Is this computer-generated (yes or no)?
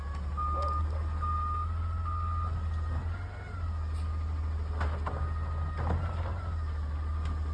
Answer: no